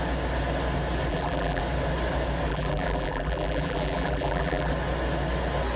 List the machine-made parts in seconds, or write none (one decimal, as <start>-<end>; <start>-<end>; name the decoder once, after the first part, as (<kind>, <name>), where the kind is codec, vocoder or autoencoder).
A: 1.1-1.6 (vocoder, BigVGAN v2); 2.5-4.7